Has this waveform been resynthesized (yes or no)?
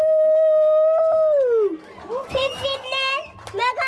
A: no